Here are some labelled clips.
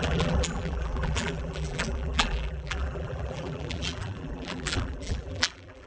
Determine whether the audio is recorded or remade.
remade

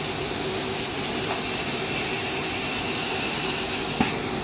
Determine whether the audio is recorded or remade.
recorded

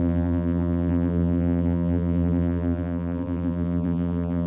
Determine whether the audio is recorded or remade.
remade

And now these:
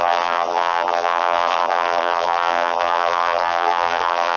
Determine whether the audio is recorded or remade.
remade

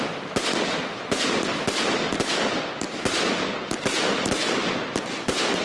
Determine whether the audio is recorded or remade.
recorded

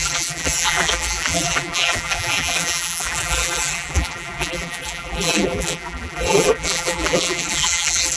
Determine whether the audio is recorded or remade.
remade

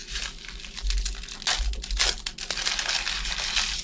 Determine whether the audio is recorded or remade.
recorded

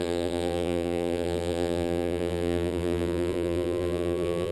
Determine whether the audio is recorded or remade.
remade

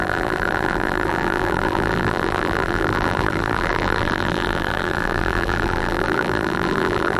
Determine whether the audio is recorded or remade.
remade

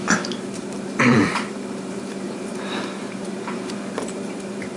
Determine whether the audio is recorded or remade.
remade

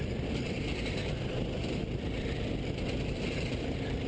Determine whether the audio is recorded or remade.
remade